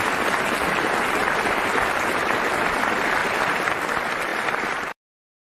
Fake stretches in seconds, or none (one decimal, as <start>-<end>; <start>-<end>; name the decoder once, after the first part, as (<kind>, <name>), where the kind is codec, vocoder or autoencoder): 3.2-3.7 (vocoder, BigVGAN v2); 4.3-5.5